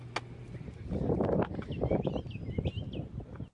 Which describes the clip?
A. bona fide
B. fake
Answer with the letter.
A